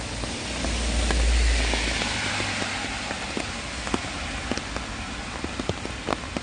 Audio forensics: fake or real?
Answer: real